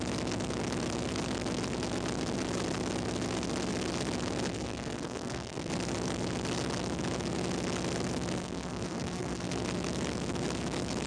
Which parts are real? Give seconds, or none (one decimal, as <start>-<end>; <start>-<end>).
0.0-4.5; 5.7-8.4; 9.5-11.1